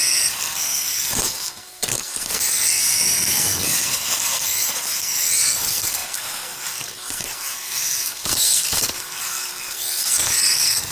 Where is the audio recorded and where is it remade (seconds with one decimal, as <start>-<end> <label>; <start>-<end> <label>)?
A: 0.0-10.9 remade